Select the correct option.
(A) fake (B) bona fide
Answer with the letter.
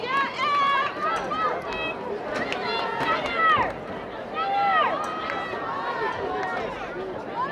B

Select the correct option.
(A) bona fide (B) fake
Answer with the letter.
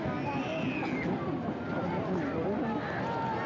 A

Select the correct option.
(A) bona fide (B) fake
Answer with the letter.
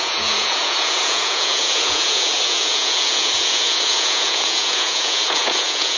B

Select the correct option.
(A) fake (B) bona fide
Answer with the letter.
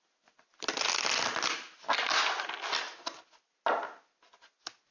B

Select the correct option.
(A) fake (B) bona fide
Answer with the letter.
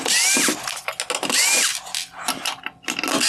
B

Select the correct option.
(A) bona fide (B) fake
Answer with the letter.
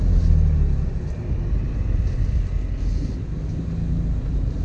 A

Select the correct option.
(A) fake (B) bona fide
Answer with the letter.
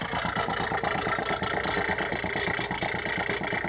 B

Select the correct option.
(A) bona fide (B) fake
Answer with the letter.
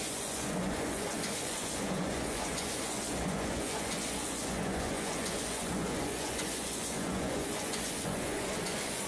B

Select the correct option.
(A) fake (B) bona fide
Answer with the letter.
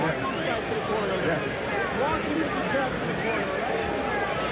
B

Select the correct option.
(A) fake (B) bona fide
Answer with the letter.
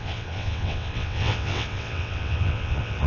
A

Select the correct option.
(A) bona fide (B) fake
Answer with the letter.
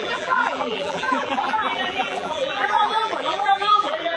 B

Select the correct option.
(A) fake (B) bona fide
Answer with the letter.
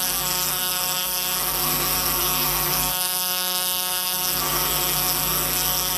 A